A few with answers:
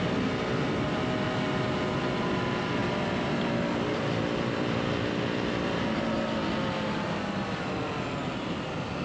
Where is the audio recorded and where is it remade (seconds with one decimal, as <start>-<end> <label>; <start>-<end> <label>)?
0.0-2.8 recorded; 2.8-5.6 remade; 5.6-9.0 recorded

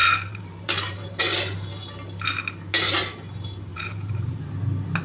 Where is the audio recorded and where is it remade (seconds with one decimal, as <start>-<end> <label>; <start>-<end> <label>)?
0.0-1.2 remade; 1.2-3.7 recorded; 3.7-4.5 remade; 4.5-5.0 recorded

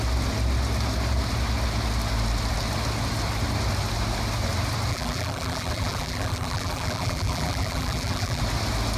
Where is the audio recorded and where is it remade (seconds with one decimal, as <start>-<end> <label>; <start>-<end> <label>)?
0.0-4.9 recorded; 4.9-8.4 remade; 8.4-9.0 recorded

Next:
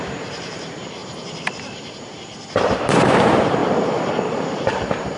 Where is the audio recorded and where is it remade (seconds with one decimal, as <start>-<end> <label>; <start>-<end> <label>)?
0.0-1.0 remade; 1.0-1.7 recorded; 1.7-3.6 remade; 3.6-4.1 recorded; 4.1-5.2 remade

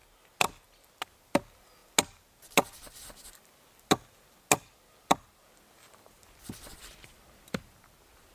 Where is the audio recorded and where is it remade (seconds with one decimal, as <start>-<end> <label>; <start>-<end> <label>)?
0.0-8.3 recorded

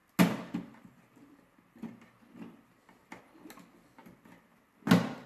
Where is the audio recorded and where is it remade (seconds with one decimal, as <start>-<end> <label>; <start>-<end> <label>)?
0.0-5.3 recorded

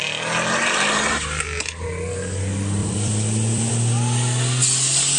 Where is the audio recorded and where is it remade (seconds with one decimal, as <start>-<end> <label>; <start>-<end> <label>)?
0.0-2.8 recorded; 2.8-3.7 remade; 3.7-5.2 recorded

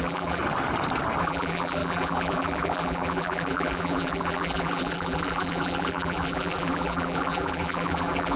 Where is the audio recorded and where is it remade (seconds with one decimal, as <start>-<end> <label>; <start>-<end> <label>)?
0.0-0.4 remade; 0.4-1.2 recorded; 1.2-8.4 remade